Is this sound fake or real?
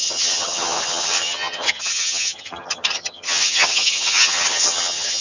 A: fake